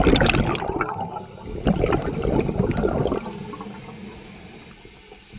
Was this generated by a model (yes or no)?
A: no